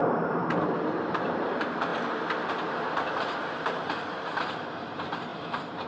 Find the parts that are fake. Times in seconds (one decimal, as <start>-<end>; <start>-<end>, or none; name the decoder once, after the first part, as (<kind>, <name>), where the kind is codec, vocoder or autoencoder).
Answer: 0.0-1.9 (vocoder, BigVGAN v2); 2.5-5.9